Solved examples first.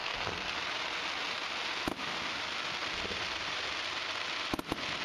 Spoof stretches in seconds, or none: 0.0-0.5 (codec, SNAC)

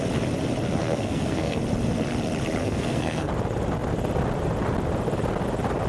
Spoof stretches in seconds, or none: 0.8-1.6 (codec, SNAC); 2.6-3.3

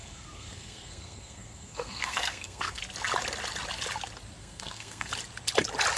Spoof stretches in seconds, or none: 0.0-2.8 (codec, SNAC); 4.4-5.1

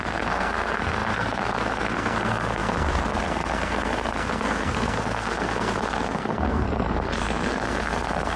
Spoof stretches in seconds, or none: 0.0-8.4 (codec, SNAC)

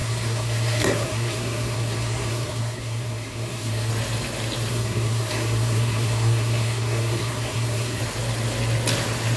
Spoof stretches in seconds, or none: 0.0-3.9 (codec, SNAC); 4.7-8.0

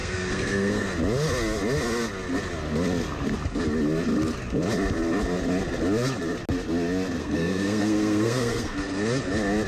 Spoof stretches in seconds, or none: 0.0-0.9 (codec, SNAC); 7.2-8.8

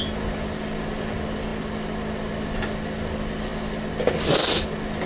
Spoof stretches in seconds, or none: none

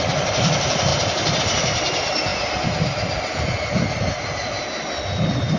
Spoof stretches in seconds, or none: none